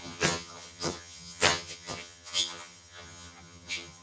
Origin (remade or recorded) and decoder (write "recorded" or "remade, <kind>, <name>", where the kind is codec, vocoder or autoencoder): remade, vocoder, HiFi-GAN